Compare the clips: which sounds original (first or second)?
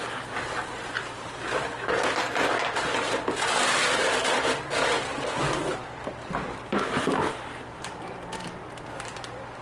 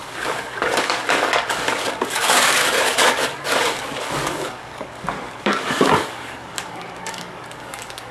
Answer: first